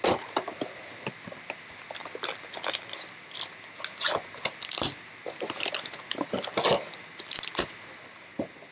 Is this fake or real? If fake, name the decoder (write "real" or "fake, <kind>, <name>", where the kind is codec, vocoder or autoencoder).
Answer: real